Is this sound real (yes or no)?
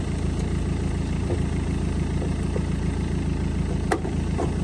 no